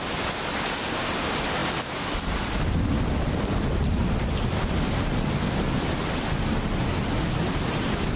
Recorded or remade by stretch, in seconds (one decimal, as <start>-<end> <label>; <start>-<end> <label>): 0.0-8.2 recorded